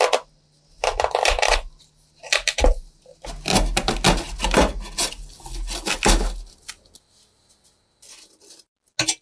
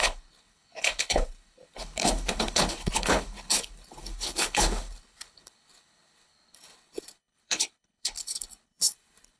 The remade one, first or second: second